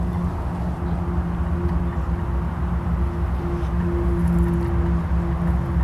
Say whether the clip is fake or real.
real